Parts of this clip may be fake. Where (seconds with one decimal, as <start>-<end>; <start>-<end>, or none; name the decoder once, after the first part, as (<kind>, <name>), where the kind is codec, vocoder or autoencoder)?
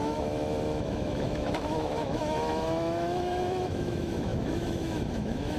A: 0.0-5.6 (autoencoder, DAC-VAE)